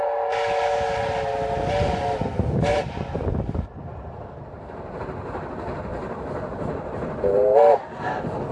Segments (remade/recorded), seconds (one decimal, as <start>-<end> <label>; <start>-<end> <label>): 0.0-2.7 recorded; 2.7-5.0 remade; 5.0-5.9 recorded; 5.9-7.2 remade; 7.2-8.5 recorded